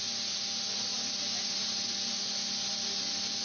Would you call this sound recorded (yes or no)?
yes